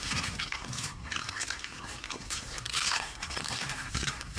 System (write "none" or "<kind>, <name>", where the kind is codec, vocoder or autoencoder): codec, SNAC